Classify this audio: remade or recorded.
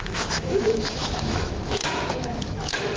remade